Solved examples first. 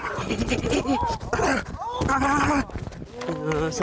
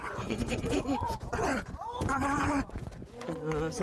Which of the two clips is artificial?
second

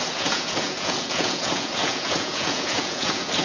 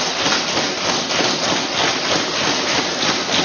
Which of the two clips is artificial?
first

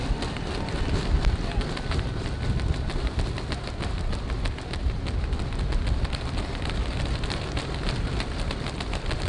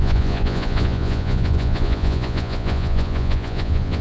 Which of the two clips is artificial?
second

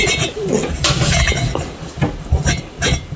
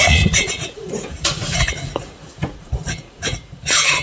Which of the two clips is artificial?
second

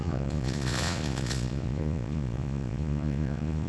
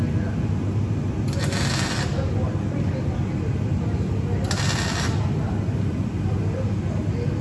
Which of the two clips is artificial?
first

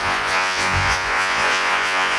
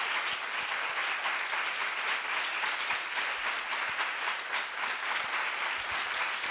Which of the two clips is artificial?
first